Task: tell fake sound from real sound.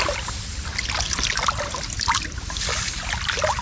real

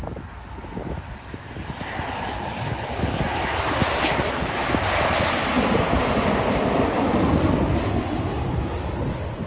real